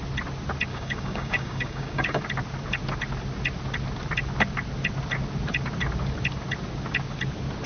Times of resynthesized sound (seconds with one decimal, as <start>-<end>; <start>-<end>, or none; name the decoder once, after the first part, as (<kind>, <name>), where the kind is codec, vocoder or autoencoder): 0.7-2.2 (codec, DAC)